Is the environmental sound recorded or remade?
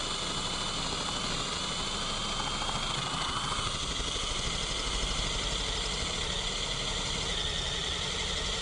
recorded